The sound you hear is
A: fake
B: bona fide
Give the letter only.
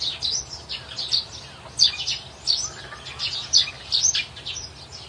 B